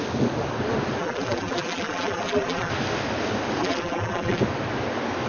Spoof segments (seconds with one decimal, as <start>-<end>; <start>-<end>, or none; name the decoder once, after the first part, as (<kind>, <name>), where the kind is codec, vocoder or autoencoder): 1.0-2.7 (vocoder, BigVGAN v2); 3.6-4.4